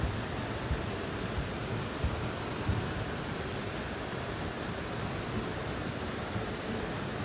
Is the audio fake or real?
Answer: fake